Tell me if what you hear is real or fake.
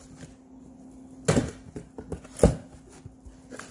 real